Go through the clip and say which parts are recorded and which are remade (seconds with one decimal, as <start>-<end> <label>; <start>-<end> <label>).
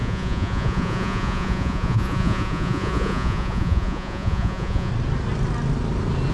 0.0-4.9 remade; 4.9-6.3 recorded